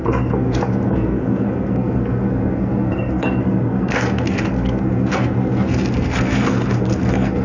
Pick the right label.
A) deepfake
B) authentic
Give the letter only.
A